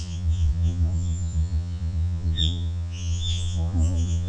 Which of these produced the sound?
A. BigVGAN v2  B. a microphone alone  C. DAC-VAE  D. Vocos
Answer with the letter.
D